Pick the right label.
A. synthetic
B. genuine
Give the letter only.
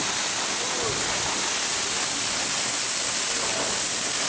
B